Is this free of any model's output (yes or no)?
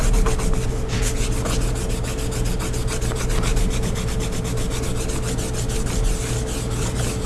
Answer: yes